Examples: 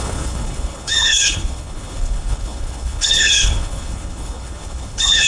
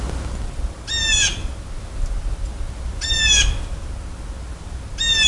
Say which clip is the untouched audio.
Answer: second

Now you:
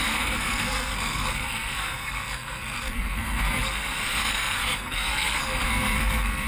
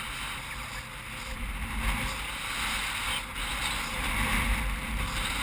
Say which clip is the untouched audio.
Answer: second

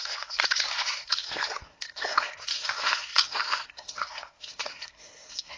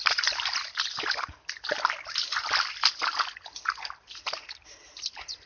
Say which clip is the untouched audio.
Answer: second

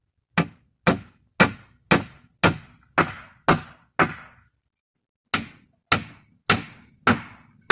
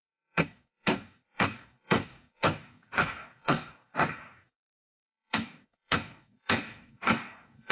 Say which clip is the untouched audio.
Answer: first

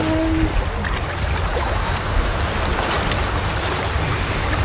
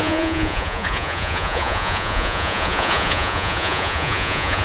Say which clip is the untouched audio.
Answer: first